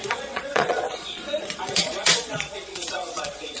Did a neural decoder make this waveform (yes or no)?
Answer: yes